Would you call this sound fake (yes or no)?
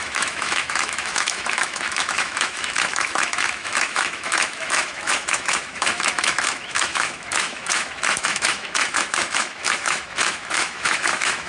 yes